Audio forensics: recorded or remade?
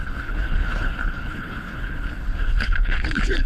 remade